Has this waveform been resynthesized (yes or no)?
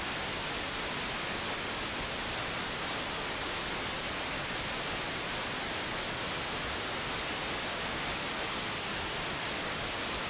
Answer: no